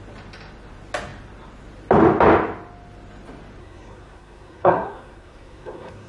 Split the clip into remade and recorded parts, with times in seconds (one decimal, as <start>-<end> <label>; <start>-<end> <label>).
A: 0.0-3.6 recorded; 3.6-6.1 remade